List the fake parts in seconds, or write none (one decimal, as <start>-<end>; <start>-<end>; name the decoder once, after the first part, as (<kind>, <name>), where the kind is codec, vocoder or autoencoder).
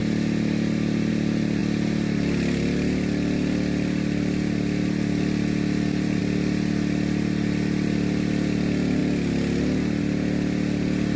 0.0-1.1 (vocoder, BigVGAN v2)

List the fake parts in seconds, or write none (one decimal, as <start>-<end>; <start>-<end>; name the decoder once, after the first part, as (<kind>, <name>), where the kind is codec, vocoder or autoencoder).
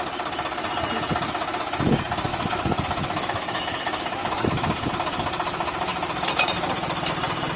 2.3-4.9 (autoencoder, DAC-VAE)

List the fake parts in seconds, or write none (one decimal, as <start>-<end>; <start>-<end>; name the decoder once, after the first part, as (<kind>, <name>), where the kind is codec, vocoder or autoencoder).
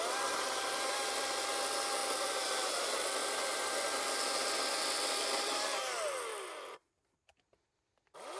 none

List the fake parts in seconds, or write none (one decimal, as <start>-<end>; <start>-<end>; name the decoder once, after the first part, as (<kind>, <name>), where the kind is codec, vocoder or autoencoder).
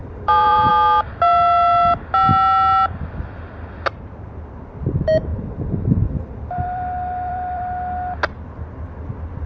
0.0-0.7 (vocoder, BigVGAN v2); 5.3-7.6